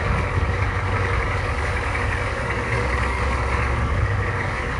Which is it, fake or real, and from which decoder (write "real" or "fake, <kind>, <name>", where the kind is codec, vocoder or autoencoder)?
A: fake, codec, DAC